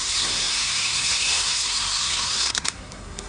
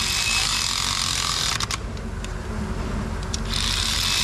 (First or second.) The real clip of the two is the second